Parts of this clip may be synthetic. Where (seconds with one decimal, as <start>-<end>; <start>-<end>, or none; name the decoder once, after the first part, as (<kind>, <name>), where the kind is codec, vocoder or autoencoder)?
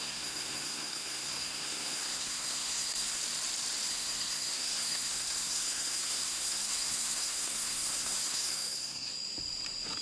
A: 0.0-3.2 (codec, SNAC); 3.9-9.1